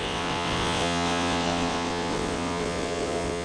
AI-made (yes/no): yes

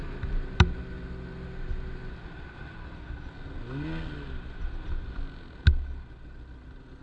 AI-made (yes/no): no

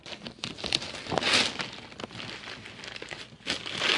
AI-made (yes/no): no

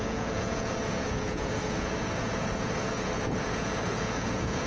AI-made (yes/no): yes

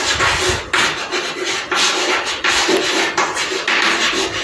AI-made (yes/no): no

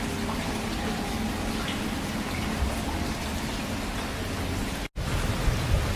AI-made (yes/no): no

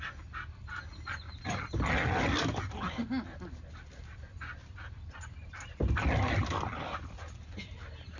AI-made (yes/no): no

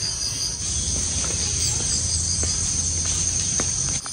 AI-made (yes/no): no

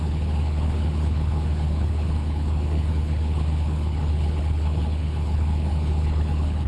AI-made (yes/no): yes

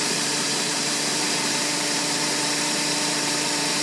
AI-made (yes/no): yes